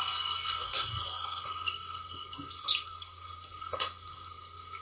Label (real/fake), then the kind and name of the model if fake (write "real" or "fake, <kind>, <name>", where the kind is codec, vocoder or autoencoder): fake, codec, SNAC